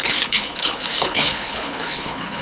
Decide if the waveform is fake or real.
fake